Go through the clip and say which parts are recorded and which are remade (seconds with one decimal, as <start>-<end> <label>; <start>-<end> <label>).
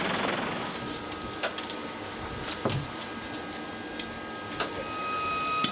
0.0-5.7 recorded